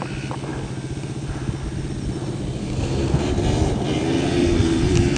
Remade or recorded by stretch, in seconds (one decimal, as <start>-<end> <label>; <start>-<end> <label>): 0.0-2.6 recorded; 2.6-3.2 remade; 3.2-5.2 recorded